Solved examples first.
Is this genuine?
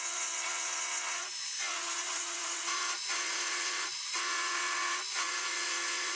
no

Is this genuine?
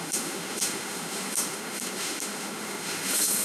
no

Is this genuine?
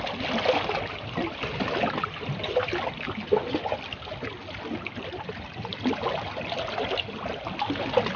yes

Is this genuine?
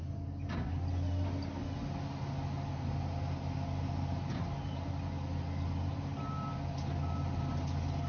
yes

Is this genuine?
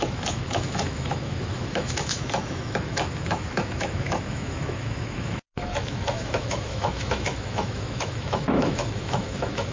no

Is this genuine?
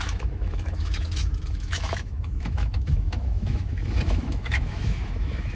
no